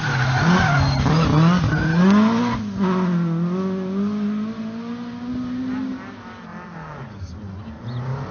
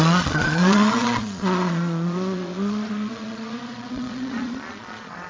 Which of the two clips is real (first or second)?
first